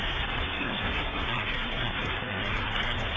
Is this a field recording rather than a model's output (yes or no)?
no